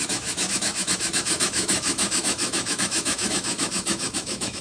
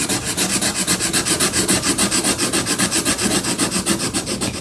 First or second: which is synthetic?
first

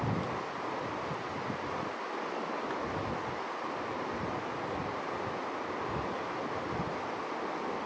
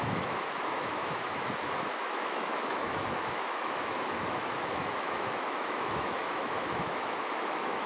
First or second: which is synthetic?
second